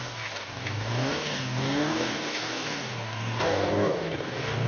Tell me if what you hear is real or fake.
fake